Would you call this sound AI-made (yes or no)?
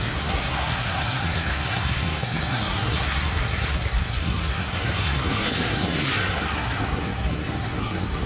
yes